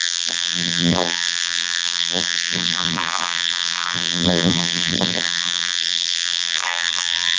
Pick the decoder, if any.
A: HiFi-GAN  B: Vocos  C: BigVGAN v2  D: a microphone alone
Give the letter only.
C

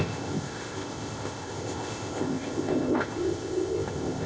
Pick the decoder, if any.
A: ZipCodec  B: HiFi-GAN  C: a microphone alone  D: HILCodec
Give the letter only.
A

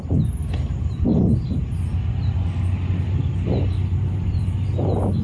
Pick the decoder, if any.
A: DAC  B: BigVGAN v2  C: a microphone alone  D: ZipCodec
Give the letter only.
C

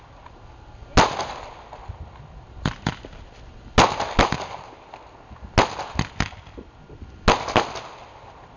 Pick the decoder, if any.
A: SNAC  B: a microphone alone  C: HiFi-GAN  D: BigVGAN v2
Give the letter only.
B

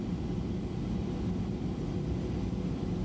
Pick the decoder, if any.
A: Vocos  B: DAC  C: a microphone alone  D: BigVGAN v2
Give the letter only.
C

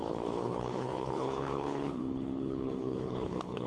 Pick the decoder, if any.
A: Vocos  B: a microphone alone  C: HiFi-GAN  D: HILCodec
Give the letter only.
D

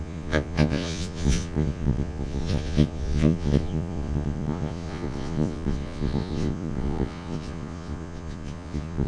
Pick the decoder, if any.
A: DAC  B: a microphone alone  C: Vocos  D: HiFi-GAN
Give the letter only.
C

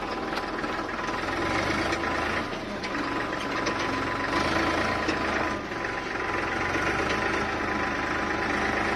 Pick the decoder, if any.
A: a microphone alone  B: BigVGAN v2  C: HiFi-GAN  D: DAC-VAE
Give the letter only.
A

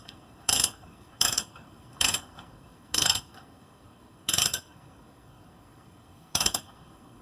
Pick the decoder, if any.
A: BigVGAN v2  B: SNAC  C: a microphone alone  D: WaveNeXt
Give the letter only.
B